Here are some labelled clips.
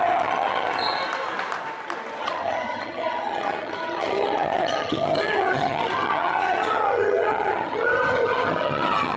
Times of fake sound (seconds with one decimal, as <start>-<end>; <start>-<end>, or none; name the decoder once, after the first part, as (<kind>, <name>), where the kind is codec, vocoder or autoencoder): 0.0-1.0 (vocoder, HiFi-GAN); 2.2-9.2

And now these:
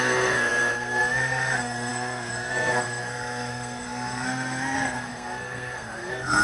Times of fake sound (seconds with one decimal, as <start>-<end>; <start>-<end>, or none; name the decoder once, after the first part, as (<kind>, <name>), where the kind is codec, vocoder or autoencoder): 0.0-6.4 (codec, SNAC)

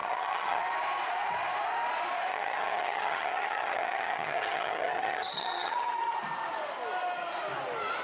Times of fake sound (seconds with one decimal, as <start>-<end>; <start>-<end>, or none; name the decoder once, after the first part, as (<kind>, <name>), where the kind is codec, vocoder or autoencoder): 0.0-0.6 (vocoder, HiFi-GAN); 2.3-6.1

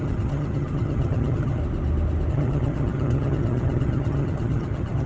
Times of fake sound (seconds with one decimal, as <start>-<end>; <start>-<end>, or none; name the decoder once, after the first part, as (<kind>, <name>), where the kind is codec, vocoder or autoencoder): 0.0-1.6 (vocoder, HiFi-GAN); 2.3-5.1

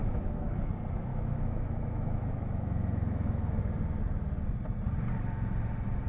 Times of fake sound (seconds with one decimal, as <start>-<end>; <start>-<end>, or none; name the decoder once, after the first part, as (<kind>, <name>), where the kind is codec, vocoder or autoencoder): 0.0-0.7 (autoencoder, DAC-VAE); 1.1-3.6